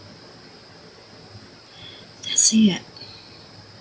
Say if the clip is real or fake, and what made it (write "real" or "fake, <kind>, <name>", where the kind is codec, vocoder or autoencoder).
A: real